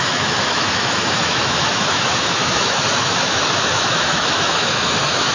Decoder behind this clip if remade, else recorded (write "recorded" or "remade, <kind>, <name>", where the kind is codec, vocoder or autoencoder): remade, autoencoder, DAC-VAE